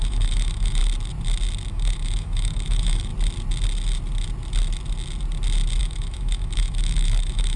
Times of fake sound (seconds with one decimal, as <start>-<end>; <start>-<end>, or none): 0.0-0.8; 1.7-3.1; 5.8-7.6

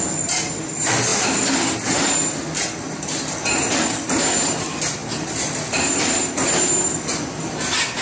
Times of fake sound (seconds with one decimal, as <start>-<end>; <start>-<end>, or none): 1.1-2.1